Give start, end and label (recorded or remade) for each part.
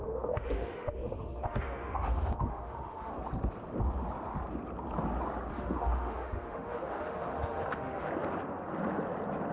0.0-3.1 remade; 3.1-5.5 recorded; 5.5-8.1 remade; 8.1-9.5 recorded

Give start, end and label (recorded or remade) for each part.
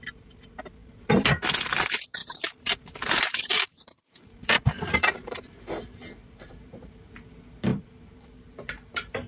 0.0-2.2 recorded; 2.2-7.1 remade; 7.1-7.7 recorded; 7.7-9.3 remade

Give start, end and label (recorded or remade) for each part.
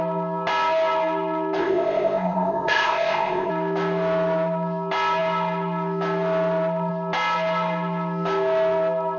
0.0-1.6 recorded; 1.6-3.5 remade; 3.5-9.2 recorded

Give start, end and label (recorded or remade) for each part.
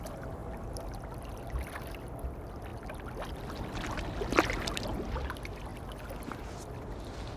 0.0-7.4 recorded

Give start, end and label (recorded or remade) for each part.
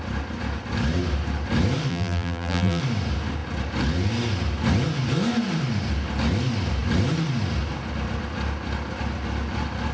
0.0-1.9 recorded; 1.9-2.8 remade; 2.8-9.9 recorded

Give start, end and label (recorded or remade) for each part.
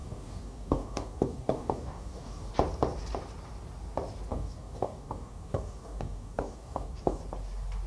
0.0-2.5 remade; 2.5-4.3 recorded; 4.3-7.2 remade; 7.2-7.9 recorded